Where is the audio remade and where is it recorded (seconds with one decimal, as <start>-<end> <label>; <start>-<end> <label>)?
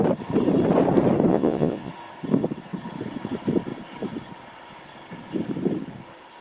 0.0-1.3 recorded; 1.3-1.9 remade; 1.9-6.4 recorded